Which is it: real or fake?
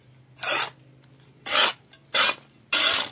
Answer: real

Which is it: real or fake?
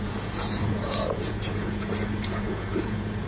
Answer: fake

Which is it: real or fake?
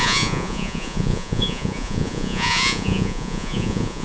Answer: fake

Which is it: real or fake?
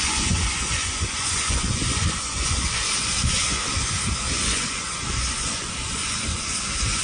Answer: fake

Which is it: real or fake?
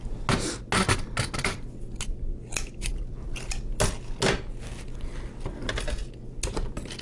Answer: real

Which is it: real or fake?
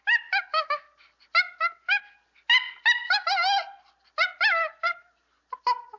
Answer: real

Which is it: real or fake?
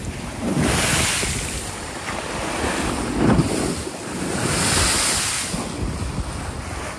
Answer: real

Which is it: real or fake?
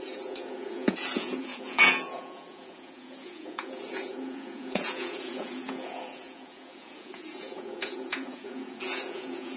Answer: fake